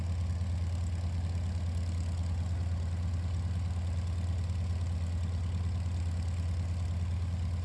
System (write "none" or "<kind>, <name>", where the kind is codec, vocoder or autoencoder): none